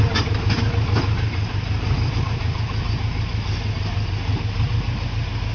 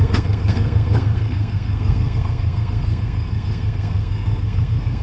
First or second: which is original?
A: first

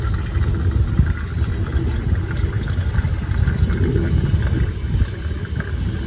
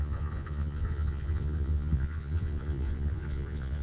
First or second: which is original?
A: first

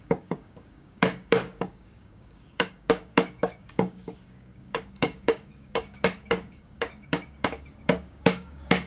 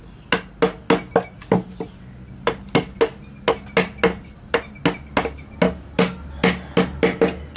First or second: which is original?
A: second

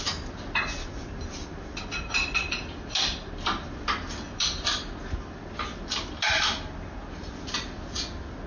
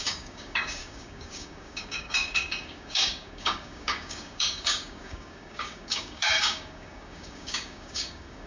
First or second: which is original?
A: first